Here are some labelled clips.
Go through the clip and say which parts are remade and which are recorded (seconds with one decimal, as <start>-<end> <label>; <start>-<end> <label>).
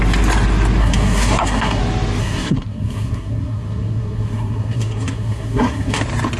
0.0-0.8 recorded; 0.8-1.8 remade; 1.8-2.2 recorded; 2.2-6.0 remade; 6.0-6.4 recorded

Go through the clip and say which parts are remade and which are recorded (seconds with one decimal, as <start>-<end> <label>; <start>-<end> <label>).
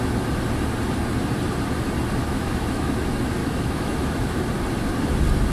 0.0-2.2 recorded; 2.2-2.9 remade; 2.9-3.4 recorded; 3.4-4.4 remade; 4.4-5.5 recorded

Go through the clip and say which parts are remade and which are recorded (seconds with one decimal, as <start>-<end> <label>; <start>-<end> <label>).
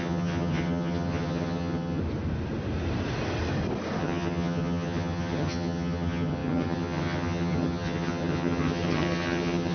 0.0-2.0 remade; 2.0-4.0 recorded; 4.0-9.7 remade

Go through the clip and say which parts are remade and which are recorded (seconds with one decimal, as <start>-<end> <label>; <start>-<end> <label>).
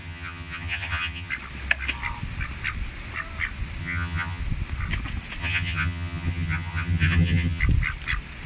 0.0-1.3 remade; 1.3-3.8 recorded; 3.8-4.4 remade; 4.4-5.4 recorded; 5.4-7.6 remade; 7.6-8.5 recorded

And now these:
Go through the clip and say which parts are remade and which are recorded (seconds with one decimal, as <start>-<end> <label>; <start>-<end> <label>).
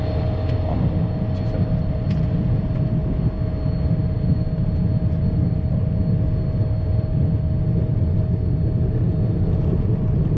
0.0-10.4 recorded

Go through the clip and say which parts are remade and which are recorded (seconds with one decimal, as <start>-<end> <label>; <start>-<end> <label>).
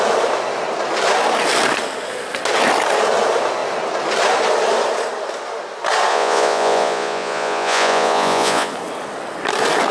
0.0-6.1 recorded; 6.1-8.7 remade; 8.7-9.9 recorded